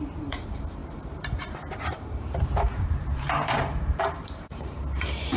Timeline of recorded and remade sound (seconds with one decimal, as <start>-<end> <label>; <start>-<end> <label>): 0.0-5.4 remade